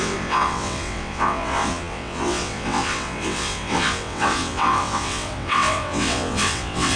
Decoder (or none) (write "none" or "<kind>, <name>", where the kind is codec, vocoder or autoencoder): vocoder, WaveNeXt